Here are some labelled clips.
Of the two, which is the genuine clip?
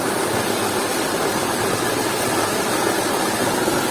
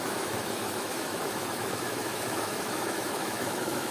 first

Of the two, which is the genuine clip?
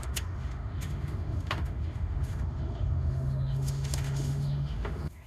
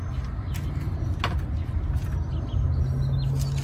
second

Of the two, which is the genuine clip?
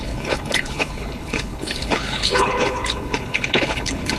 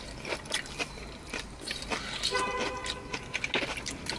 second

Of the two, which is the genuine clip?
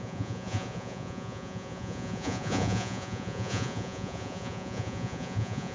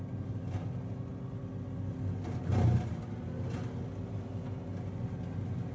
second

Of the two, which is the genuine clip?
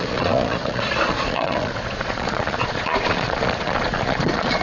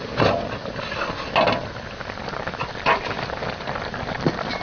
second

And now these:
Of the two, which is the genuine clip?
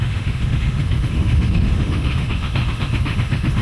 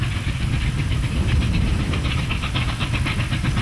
second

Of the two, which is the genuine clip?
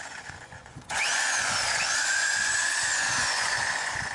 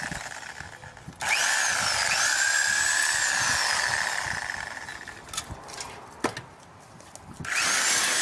second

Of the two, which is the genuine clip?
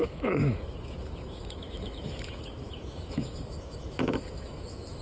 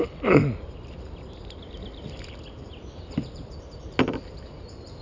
second